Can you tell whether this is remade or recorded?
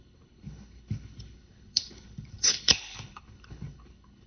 remade